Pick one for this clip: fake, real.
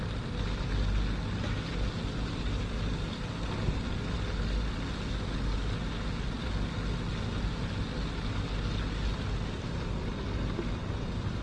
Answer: real